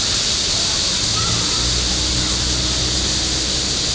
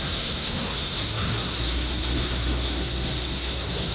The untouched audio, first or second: first